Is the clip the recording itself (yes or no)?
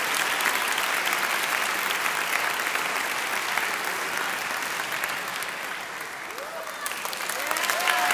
yes